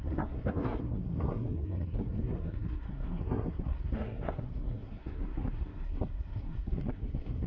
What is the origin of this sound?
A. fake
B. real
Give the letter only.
A